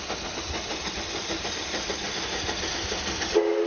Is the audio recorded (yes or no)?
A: yes